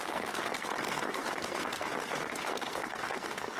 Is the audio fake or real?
fake